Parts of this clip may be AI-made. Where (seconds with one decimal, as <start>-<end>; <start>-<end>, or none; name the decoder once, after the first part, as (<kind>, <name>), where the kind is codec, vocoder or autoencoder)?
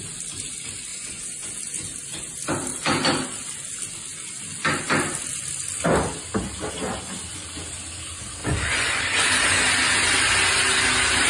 0.9-1.5 (vocoder, Vocos); 8.4-9.0